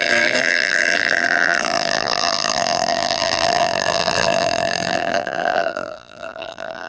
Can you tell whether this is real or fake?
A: fake